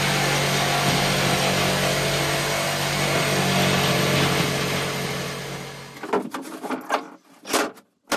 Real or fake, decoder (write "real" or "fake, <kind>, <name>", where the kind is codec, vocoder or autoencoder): real